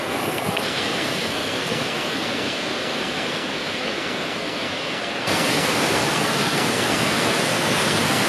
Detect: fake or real fake